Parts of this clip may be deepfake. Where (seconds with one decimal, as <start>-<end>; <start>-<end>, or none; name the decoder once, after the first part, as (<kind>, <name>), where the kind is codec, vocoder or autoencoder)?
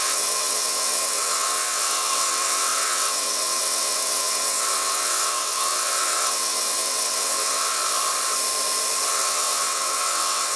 0.0-7.8 (vocoder, WaveNeXt); 9.1-10.6